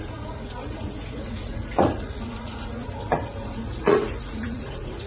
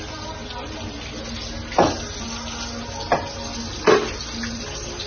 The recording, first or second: second